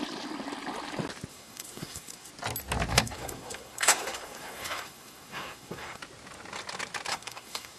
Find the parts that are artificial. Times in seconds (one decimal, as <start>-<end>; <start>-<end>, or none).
1.3-2.3; 2.9-6.0; 7.1-7.8